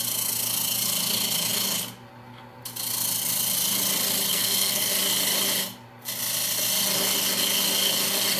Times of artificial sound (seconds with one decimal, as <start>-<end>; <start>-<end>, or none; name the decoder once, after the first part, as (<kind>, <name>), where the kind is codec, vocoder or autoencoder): 4.3-4.9 (codec, SNAC)